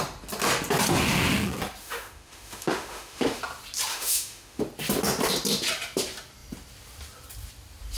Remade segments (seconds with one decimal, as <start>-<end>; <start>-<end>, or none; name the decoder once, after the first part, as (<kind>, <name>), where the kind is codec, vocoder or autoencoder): 1.8-3.4 (autoencoder, DAC-VAE); 3.9-4.6

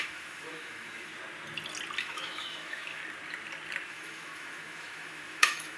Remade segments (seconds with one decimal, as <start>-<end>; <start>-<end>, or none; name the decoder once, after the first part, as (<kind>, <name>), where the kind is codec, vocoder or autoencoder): 0.0-1.1 (autoencoder, DAC-VAE); 2.0-3.0; 3.9-5.8

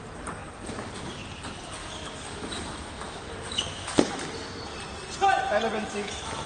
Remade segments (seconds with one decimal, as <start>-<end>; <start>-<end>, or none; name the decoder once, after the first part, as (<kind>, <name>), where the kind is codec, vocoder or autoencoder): 1.8-4.2 (autoencoder, DAC-VAE); 5.8-6.5

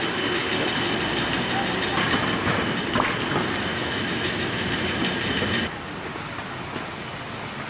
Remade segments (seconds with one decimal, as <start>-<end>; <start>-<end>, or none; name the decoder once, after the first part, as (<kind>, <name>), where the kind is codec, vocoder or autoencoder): 3.7-4.7 (autoencoder, DAC-VAE)